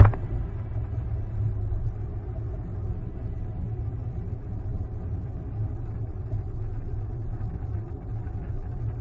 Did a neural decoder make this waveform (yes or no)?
no